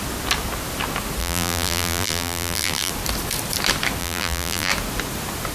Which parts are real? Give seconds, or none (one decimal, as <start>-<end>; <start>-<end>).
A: 0.0-1.2; 2.9-4.0; 4.7-5.5